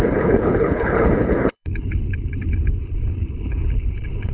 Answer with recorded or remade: remade